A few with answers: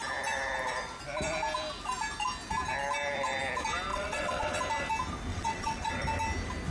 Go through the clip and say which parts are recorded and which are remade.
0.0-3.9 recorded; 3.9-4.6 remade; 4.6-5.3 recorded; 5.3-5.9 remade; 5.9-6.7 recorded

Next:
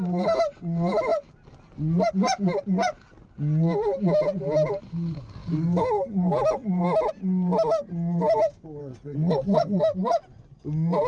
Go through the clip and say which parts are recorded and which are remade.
0.0-8.8 recorded; 8.8-9.8 remade; 9.8-11.1 recorded

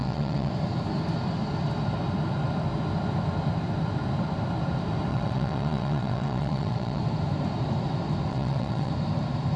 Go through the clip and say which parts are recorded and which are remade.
0.0-0.5 remade; 0.5-5.1 recorded; 5.1-7.0 remade; 7.0-8.3 recorded; 8.3-8.9 remade; 8.9-9.6 recorded

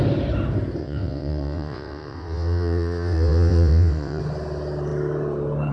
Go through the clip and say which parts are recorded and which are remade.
0.0-0.8 recorded; 0.8-4.2 remade; 4.2-5.7 recorded

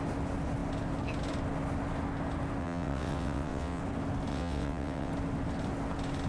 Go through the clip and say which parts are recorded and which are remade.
0.0-2.6 recorded; 2.6-3.8 remade; 3.8-4.3 recorded; 4.3-5.1 remade; 5.1-6.3 recorded

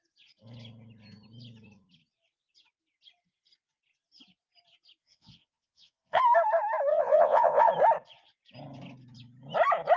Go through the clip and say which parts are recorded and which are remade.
0.0-5.0 recorded; 5.0-6.2 remade; 6.2-6.9 recorded; 6.9-7.7 remade; 7.7-10.0 recorded